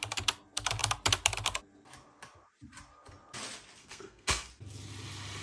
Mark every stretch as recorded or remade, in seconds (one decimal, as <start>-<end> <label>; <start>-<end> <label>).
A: 0.0-3.8 recorded; 3.8-4.5 remade; 4.5-5.4 recorded